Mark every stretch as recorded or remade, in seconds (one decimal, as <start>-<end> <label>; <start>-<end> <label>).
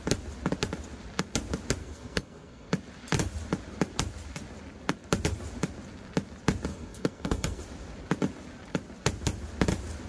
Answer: 0.0-1.8 recorded; 1.8-2.7 remade; 2.7-6.7 recorded; 6.7-7.6 remade; 7.6-10.1 recorded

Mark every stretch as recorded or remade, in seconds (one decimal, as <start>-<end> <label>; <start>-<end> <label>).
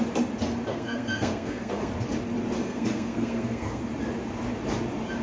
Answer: 0.0-0.7 recorded; 0.7-1.9 remade; 1.9-2.6 recorded; 2.6-3.8 remade; 3.8-5.2 recorded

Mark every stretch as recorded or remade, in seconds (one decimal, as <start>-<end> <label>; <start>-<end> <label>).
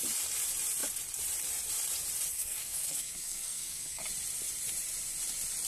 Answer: 0.0-2.3 recorded; 2.3-4.0 remade; 4.0-5.7 recorded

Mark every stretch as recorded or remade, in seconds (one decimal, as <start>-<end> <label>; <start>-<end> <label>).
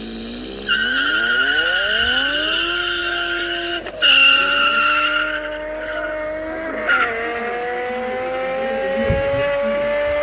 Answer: 0.0-10.2 recorded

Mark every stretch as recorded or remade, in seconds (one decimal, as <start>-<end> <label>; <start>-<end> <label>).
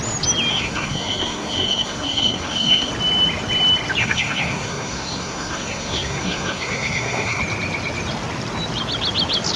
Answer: 0.0-0.5 recorded; 0.5-2.9 remade; 2.9-4.0 recorded; 4.0-7.4 remade; 7.4-9.6 recorded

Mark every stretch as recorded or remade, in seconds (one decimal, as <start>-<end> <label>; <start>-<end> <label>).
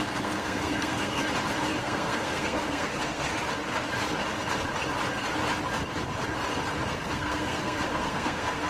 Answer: 0.0-1.2 remade; 1.2-1.8 recorded; 1.8-3.3 remade; 3.3-6.9 recorded; 6.9-8.7 remade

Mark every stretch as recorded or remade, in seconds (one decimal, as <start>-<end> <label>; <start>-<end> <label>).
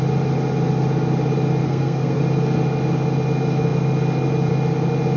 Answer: 0.0-1.6 recorded; 1.6-2.2 remade; 2.2-5.2 recorded